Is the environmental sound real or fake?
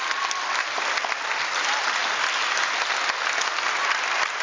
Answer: real